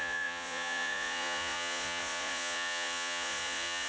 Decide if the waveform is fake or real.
fake